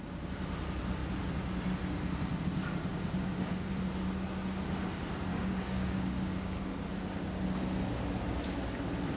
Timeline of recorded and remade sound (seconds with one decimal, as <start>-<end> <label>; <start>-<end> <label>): 0.0-2.9 recorded; 2.9-3.7 remade; 3.7-5.3 recorded; 5.3-6.6 remade; 6.6-9.2 recorded